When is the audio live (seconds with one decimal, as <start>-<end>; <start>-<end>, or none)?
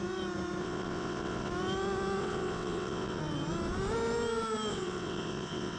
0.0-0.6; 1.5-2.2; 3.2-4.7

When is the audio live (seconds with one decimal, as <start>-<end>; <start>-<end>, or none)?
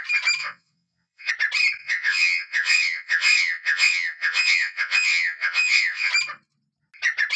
0.0-0.4; 1.3-1.8; 6.1-7.4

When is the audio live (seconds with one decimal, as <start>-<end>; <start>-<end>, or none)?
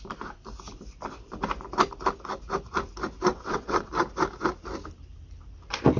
0.0-3.3; 3.9-6.0